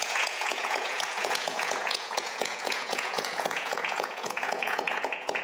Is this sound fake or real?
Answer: fake